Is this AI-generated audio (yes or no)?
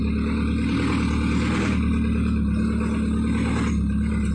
no